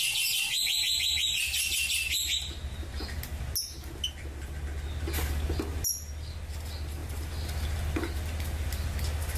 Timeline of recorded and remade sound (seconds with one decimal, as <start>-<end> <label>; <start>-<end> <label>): 0.0-9.4 recorded